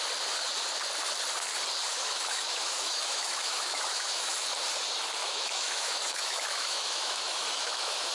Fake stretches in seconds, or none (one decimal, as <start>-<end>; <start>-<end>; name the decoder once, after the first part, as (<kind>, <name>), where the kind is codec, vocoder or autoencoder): 1.9-4.3 (autoencoder, DAC-VAE); 5.2-8.1